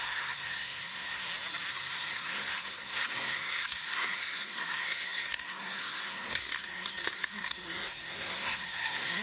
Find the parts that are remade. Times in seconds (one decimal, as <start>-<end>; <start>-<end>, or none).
0.0-1.2; 1.7-9.2